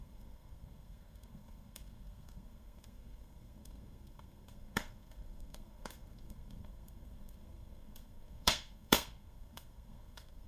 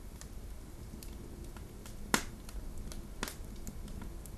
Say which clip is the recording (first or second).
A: second